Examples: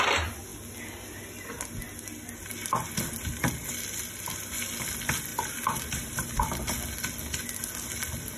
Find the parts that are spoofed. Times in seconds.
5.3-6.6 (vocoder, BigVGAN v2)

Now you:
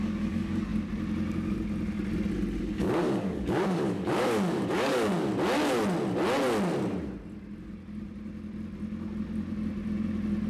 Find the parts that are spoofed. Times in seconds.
0.0-0.7 (codec, DAC); 2.6-5.3